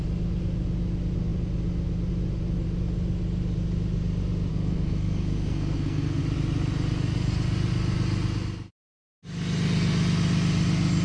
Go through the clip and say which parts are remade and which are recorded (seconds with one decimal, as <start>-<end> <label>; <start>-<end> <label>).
0.0-4.5 recorded; 4.5-6.2 remade; 6.2-11.0 recorded